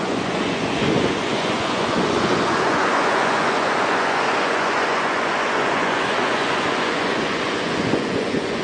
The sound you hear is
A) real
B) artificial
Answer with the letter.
B